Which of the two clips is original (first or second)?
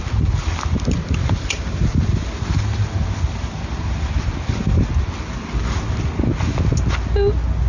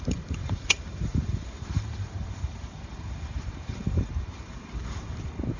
first